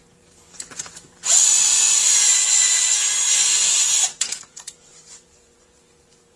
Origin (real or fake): fake